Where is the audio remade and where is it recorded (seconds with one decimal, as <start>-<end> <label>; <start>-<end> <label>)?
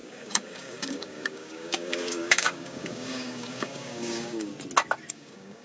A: 0.0-4.5 remade; 4.5-5.1 recorded; 5.1-5.6 remade